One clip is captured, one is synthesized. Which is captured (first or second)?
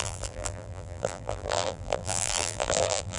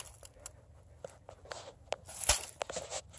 second